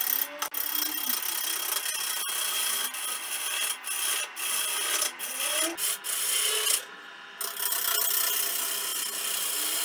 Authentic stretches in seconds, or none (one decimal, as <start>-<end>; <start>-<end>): 0.0-9.8